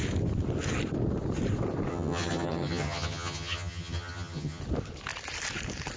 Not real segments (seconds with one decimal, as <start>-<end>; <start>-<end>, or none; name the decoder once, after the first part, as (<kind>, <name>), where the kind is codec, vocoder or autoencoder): 1.9-4.6 (vocoder, HiFi-GAN)